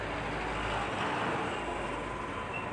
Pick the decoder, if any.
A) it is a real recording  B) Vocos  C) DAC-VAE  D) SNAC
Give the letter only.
A